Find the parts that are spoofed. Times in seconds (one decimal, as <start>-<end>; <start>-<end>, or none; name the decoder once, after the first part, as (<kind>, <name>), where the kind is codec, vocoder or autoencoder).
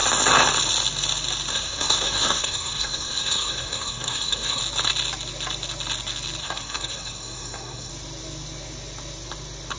1.5-4.6 (codec, SNAC); 6.4-7.9